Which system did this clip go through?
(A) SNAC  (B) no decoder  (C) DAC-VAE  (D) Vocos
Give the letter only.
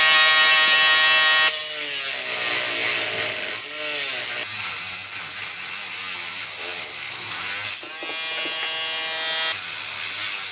B